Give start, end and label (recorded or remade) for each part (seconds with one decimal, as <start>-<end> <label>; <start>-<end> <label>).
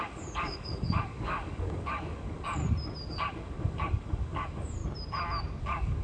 0.0-2.6 remade; 2.6-3.1 recorded; 3.1-4.8 remade; 4.8-5.6 recorded; 5.6-6.0 remade